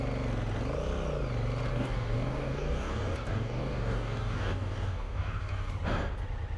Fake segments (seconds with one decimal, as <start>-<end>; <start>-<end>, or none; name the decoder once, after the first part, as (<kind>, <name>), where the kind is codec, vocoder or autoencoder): 1.7-5.7 (codec, DAC)